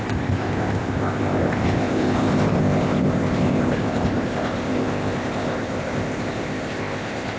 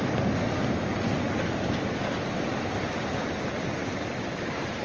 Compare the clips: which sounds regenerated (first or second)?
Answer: first